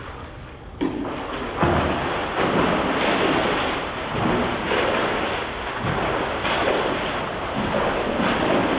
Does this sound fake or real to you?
real